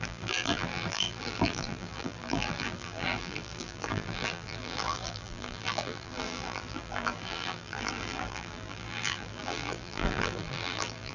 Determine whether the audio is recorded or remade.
remade